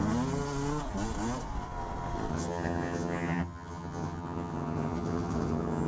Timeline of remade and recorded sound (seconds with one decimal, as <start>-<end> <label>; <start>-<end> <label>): 0.0-2.3 recorded; 2.3-5.9 remade